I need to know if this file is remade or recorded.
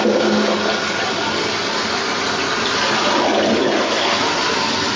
recorded